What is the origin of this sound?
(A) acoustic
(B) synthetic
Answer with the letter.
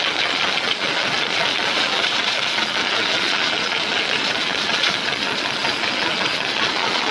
B